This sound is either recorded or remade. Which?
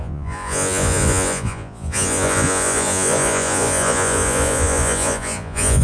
remade